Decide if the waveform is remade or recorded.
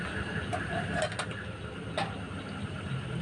recorded